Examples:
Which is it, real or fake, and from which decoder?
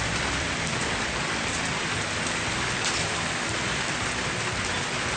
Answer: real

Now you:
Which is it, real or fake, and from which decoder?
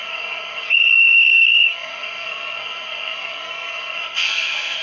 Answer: fake, codec, SNAC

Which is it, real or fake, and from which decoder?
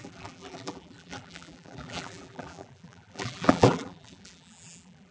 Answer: fake, vocoder, BigVGAN v2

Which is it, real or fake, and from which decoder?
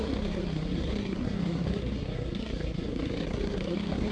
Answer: fake, codec, SNAC